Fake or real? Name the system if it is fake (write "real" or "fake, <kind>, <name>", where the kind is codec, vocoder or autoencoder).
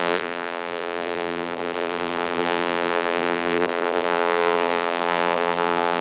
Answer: fake, vocoder, BigVGAN v2